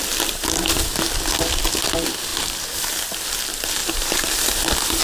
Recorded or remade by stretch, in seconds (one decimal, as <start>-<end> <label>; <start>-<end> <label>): 0.0-3.8 recorded; 3.8-4.4 remade; 4.4-5.0 recorded